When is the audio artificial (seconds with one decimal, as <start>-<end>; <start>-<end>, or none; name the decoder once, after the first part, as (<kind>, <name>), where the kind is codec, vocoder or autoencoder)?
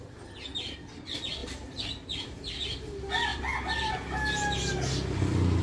1.4-2.6 (vocoder, BigVGAN v2); 3.3-4.0